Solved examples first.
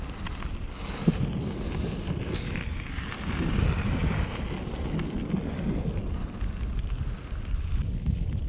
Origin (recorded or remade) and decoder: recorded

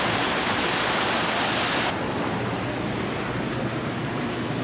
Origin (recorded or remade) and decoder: recorded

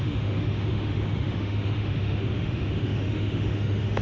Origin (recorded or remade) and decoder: remade, autoencoder, DAC-VAE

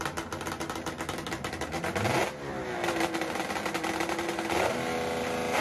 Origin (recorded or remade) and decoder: recorded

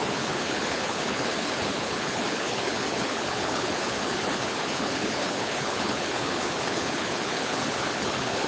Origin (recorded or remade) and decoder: remade, codec, HILCodec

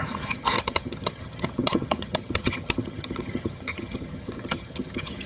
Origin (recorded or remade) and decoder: remade, vocoder, HiFi-GAN